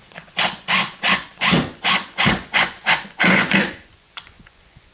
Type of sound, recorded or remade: remade